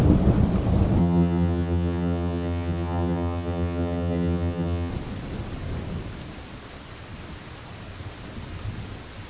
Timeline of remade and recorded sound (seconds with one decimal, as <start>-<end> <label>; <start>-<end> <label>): 0.0-1.0 recorded; 1.0-4.9 remade; 4.9-9.3 recorded